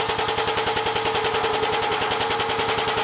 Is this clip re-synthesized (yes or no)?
no